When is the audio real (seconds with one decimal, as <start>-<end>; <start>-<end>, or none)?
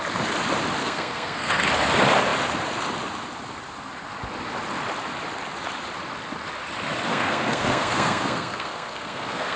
0.0-0.8; 1.7-7.1